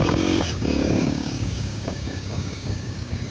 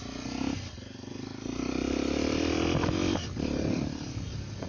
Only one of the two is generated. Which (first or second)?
first